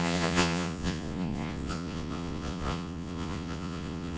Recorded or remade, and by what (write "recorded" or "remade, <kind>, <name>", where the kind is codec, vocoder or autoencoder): remade, vocoder, Vocos